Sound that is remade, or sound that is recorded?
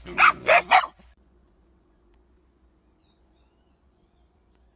remade